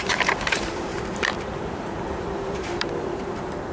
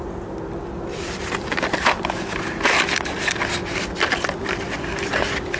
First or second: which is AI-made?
first